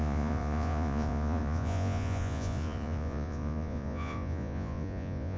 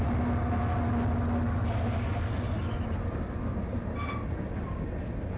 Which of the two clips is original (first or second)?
second